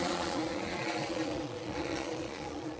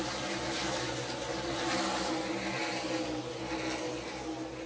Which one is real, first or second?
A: second